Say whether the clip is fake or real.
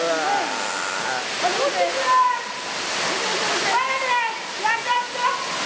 real